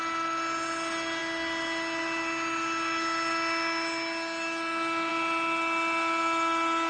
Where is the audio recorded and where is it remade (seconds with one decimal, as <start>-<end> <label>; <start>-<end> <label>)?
0.0-6.9 recorded

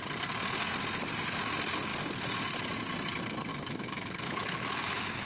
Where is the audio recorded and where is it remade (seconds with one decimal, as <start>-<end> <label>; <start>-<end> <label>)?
0.0-3.5 recorded; 3.5-5.3 remade

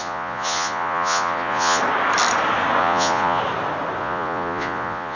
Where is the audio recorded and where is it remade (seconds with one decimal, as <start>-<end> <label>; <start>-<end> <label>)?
0.0-1.8 remade; 1.8-2.8 recorded; 2.8-3.4 remade; 3.4-4.0 recorded; 4.0-5.2 remade